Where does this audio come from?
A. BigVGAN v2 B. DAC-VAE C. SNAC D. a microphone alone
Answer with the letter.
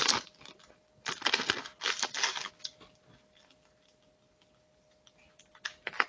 D